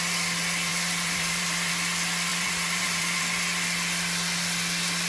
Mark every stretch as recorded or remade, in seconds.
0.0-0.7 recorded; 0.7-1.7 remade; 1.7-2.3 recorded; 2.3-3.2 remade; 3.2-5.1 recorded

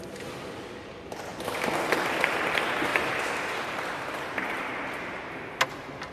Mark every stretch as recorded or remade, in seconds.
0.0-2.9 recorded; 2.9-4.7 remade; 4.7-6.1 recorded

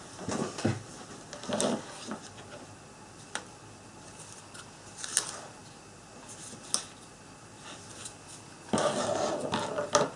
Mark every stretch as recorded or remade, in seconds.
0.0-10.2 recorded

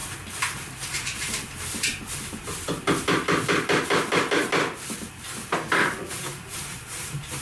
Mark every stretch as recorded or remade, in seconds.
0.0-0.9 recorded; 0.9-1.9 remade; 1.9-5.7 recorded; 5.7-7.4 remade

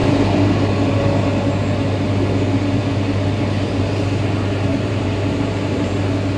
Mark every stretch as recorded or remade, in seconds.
0.0-4.7 recorded; 4.7-5.9 remade; 5.9-6.4 recorded